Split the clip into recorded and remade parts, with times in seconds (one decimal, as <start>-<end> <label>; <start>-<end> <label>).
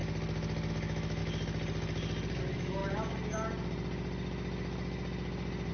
0.0-0.7 recorded; 0.7-1.2 remade; 1.2-2.4 recorded; 2.4-2.8 remade; 2.8-5.7 recorded